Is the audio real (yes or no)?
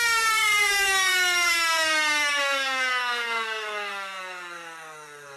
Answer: no